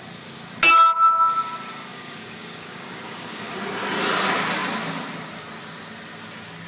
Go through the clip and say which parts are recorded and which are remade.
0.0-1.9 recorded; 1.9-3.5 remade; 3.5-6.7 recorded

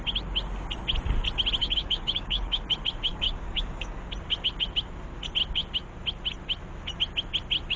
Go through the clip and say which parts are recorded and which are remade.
0.0-1.6 recorded; 1.6-2.6 remade; 2.6-3.1 recorded; 3.1-4.0 remade; 4.0-7.8 recorded

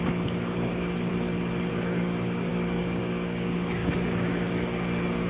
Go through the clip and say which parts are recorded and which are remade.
0.0-1.1 remade; 1.1-1.7 recorded; 1.7-5.3 remade

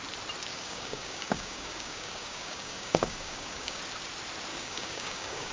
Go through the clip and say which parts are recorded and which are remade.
0.0-0.5 recorded; 0.5-3.8 remade; 3.8-4.5 recorded; 4.5-5.5 remade